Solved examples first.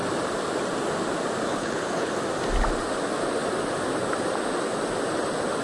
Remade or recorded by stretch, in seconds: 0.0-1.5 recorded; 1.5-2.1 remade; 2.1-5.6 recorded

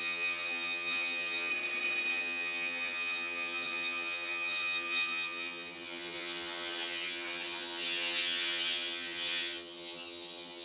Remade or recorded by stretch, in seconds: 0.0-1.5 remade; 1.5-2.1 recorded; 2.1-10.6 remade

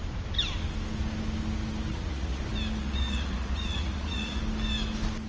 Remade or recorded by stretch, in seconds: 0.0-1.9 recorded; 1.9-2.4 remade; 2.4-2.8 recorded; 2.8-4.4 remade; 4.4-5.3 recorded

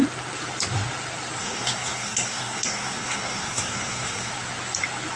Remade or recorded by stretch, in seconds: 0.0-1.4 recorded; 1.4-4.3 remade; 4.3-5.2 recorded

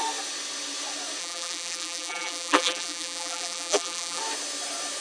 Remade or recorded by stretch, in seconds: 0.0-1.2 recorded; 1.2-4.2 remade; 4.2-5.0 recorded

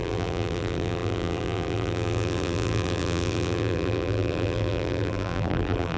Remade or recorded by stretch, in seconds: 0.0-6.0 remade

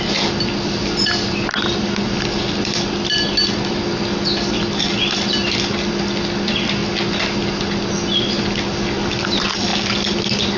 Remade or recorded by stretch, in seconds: 0.0-10.6 recorded